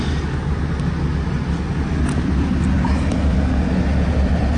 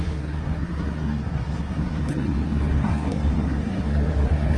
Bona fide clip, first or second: first